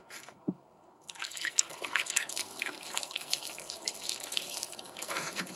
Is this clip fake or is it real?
fake